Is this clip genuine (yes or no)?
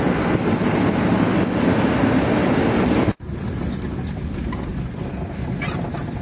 yes